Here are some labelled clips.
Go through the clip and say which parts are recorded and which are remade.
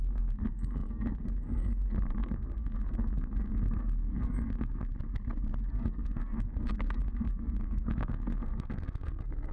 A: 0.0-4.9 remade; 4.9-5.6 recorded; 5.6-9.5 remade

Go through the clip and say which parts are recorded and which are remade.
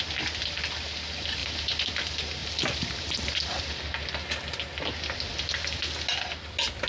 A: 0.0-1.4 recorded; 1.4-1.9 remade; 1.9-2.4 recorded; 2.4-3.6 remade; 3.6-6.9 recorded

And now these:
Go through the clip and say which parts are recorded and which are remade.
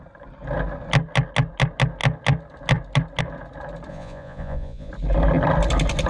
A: 0.0-3.9 recorded; 3.9-4.9 remade; 4.9-6.1 recorded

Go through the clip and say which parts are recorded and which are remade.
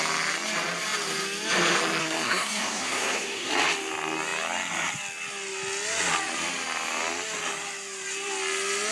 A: 0.0-2.0 recorded; 2.0-3.5 remade; 3.5-8.9 recorded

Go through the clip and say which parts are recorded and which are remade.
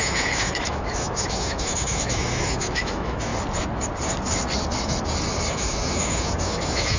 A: 0.0-3.3 remade; 3.3-5.5 recorded; 5.5-7.0 remade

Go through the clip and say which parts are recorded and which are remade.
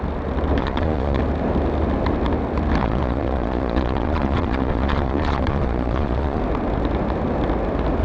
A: 0.0-0.6 recorded; 0.6-1.2 remade; 1.2-2.8 recorded; 2.8-6.4 remade; 6.4-8.0 recorded